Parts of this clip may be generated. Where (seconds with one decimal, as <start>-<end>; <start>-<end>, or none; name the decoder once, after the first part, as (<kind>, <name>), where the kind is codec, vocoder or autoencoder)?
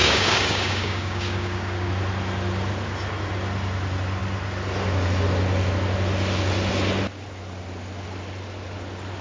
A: 0.0-1.9 (codec, DAC)